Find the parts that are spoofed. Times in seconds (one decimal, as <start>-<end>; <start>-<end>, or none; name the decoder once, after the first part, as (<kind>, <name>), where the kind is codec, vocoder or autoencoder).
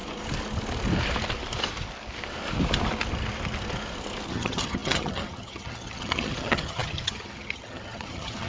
4.3-8.5 (vocoder, HiFi-GAN)